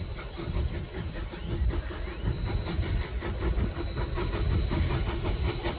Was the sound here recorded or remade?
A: recorded